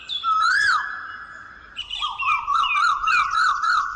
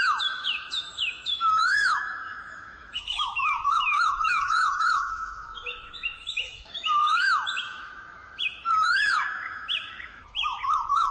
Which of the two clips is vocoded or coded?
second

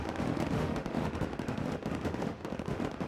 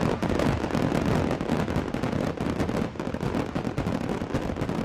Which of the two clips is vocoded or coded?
first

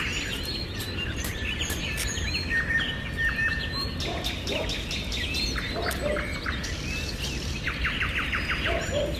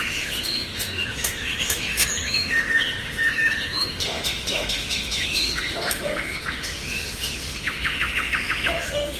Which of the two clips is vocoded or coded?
second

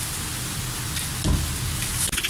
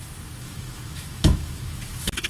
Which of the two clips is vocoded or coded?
second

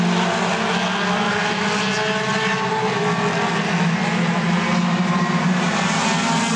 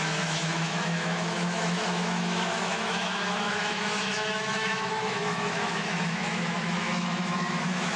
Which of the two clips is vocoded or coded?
second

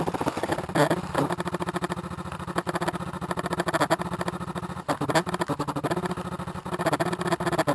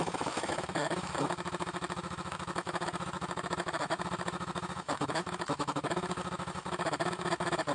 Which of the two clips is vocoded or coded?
second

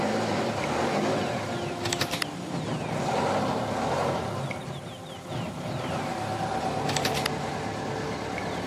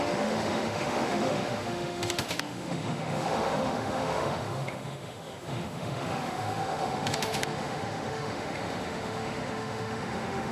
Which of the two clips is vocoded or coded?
second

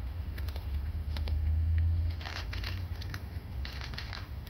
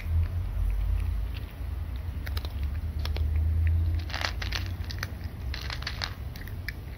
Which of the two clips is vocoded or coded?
first